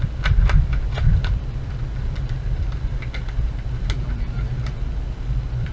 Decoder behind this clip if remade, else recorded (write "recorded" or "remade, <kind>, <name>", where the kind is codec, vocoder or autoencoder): recorded